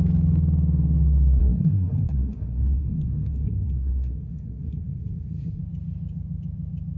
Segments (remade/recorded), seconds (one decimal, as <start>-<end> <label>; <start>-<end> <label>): 0.0-1.4 recorded; 1.4-5.6 remade; 5.6-7.0 recorded